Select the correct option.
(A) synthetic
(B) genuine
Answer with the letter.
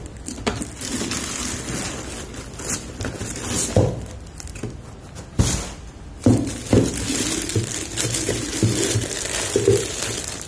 B